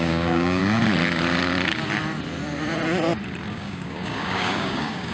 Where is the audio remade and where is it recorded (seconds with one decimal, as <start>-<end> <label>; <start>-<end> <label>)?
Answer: 0.0-0.6 remade; 0.6-3.5 recorded; 3.5-5.1 remade

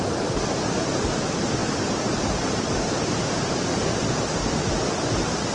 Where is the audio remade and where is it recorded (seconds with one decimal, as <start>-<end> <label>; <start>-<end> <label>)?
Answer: 0.0-4.4 remade; 4.4-5.5 recorded

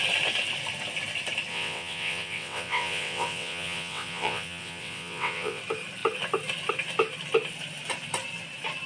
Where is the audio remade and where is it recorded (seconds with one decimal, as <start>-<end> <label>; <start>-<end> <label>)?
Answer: 0.0-1.5 recorded; 1.5-5.6 remade; 5.6-8.9 recorded

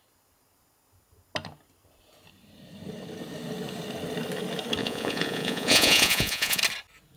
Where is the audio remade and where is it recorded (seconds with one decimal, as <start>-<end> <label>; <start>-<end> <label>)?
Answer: 0.0-4.8 recorded; 4.8-6.6 remade; 6.6-7.2 recorded

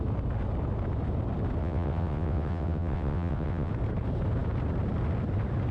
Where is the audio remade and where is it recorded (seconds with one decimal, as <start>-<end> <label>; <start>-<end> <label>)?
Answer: 0.0-1.6 recorded; 1.6-3.7 remade; 3.7-5.7 recorded

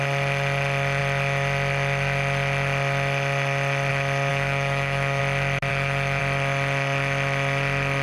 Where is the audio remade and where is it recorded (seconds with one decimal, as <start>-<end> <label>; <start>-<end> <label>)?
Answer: 0.0-4.3 recorded; 4.3-5.2 remade; 5.2-5.7 recorded; 5.7-6.2 remade; 6.2-8.0 recorded

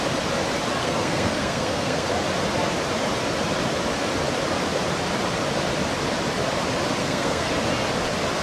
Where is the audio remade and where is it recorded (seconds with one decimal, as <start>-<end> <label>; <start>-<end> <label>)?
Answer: 0.0-0.8 recorded; 0.8-2.1 remade; 2.1-7.0 recorded; 7.0-7.5 remade; 7.5-8.4 recorded